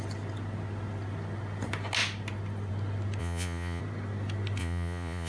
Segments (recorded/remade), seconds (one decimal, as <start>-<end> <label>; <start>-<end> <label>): 0.0-3.2 recorded; 3.2-3.8 remade; 3.8-4.6 recorded; 4.6-5.3 remade